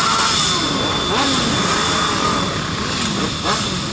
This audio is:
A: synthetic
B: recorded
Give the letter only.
B